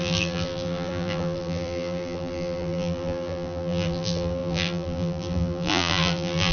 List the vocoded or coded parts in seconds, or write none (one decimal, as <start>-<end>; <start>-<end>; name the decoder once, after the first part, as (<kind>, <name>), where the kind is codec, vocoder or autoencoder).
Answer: 0.0-6.5 (vocoder, BigVGAN v2)